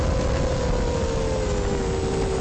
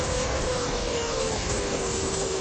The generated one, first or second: second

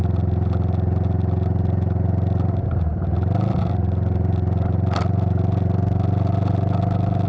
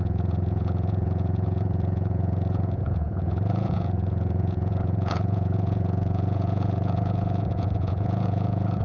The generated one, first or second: second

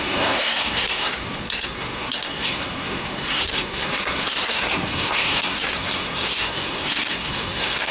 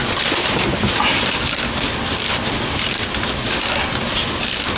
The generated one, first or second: first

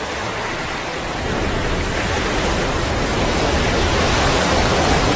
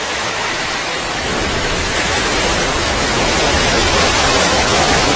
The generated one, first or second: second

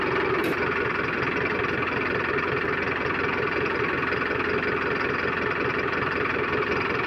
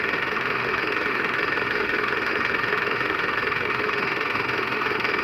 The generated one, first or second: second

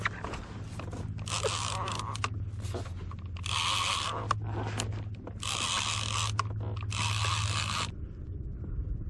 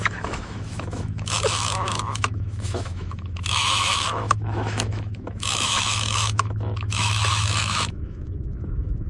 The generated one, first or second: second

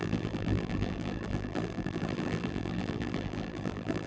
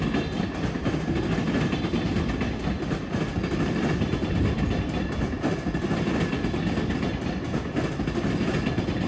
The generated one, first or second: first